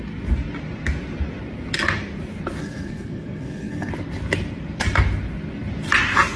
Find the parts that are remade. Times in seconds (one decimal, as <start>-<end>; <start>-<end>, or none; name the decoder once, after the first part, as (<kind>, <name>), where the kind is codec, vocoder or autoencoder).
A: 2.6-3.9 (codec, SNAC)